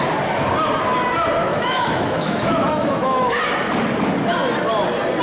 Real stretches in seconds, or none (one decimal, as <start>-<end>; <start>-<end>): 0.0-1.4; 3.4-5.2